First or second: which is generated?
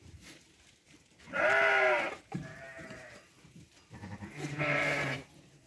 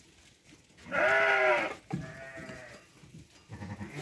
first